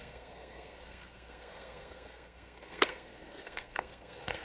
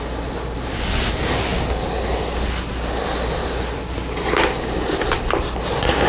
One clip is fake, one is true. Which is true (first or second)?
second